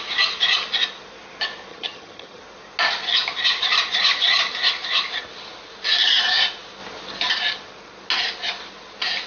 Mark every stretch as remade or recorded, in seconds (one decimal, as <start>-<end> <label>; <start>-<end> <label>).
0.0-1.7 recorded; 1.7-2.4 remade; 2.4-9.3 recorded